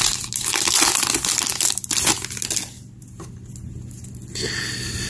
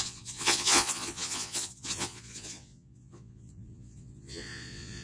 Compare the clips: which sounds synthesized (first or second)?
second